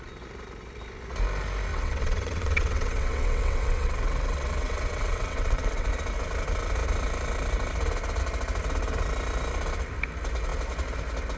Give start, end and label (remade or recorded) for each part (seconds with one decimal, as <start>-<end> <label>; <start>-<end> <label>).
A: 0.0-1.7 recorded; 1.7-5.9 remade; 5.9-11.4 recorded